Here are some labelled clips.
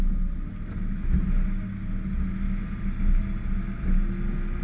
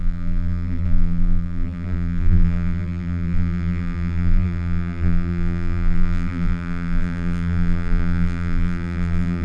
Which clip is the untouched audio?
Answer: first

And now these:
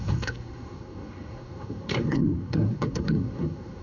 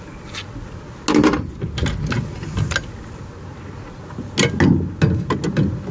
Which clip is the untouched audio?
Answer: second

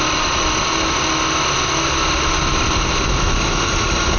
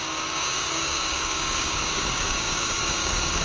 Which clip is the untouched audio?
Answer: first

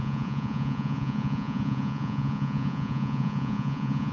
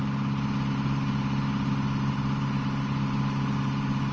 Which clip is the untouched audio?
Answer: second